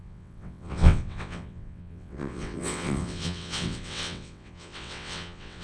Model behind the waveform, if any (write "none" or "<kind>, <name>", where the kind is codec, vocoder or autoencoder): vocoder, WaveNeXt